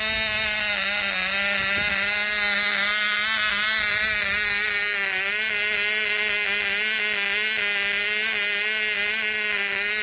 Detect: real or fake real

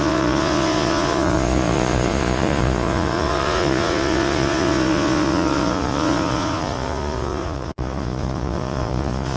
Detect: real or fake fake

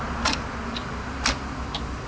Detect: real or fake real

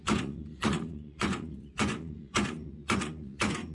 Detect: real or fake fake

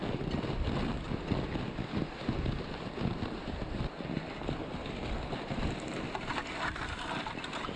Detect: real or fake real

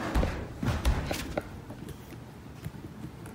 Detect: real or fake real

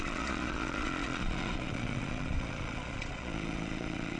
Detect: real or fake fake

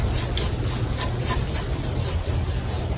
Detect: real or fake real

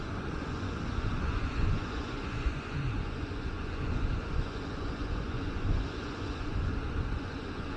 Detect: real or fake fake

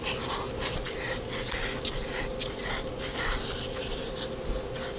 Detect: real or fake real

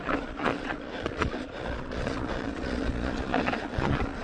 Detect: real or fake fake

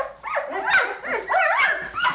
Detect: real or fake real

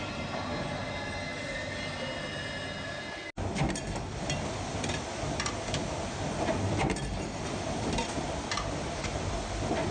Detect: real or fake real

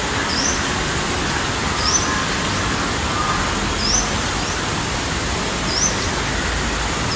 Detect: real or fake real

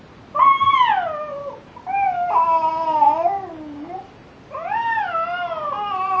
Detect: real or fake real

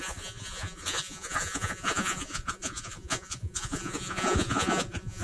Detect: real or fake fake